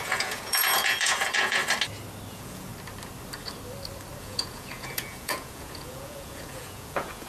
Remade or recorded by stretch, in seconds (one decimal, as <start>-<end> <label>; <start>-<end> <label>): 0.0-1.6 remade; 1.6-2.3 recorded; 2.3-2.7 remade; 2.7-4.2 recorded; 4.2-7.3 remade